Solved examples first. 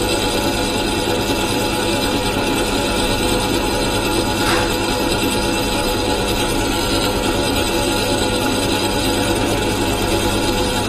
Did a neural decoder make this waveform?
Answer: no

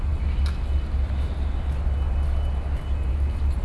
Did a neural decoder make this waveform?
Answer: no